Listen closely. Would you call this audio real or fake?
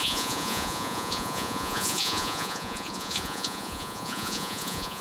fake